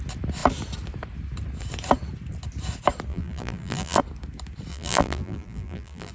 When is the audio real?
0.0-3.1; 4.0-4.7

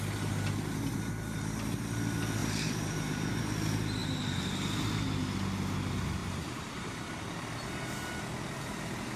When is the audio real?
0.0-2.4; 3.4-6.2; 7.1-9.2

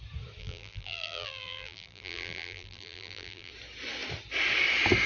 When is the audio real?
0.0-0.4; 3.5-5.1

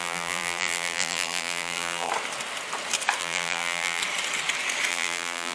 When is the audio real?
2.1-3.2; 4.0-4.9

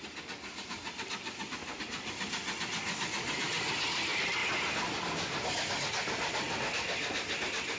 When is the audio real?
4.4-5.7

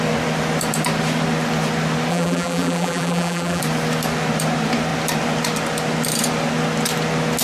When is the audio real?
0.0-2.1; 3.6-7.4

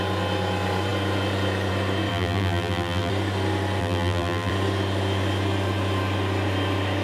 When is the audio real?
0.0-2.1; 3.1-3.8; 4.5-7.0

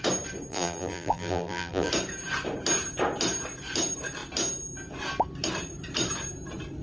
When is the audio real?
0.0-0.5; 1.9-6.8